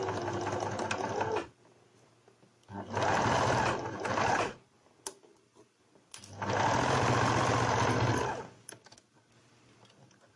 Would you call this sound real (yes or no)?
yes